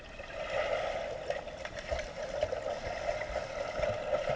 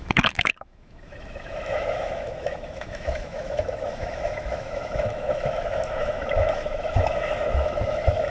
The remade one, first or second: second